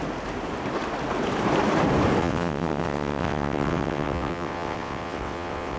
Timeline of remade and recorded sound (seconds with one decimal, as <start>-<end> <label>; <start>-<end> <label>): 0.0-2.2 recorded; 2.2-5.8 remade